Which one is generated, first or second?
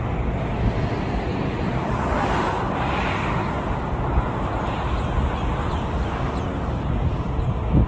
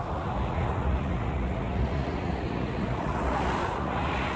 second